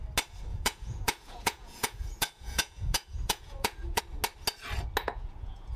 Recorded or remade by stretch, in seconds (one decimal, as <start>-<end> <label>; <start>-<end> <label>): 0.0-0.5 recorded; 0.5-4.0 remade; 4.0-5.0 recorded; 5.0-5.8 remade